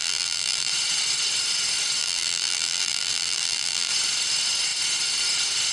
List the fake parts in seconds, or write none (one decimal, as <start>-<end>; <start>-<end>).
0.0-0.7; 2.0-3.9